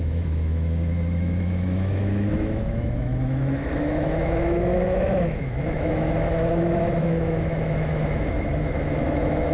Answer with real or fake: fake